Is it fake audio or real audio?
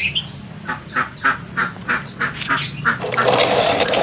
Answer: real